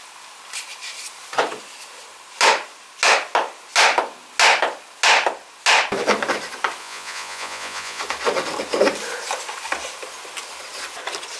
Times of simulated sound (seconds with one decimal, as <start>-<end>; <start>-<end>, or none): 6.8-8.0